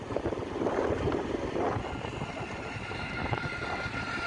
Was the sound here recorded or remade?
recorded